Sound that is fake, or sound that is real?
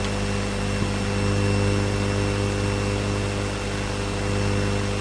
real